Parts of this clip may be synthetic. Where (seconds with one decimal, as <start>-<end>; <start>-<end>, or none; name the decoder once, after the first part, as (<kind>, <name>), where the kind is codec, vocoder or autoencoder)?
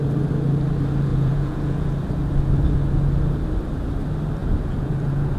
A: 1.1-1.9 (vocoder, Vocos); 4.4-5.4